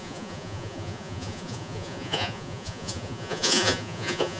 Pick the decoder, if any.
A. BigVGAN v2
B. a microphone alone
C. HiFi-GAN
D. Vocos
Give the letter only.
D